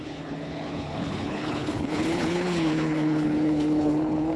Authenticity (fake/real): fake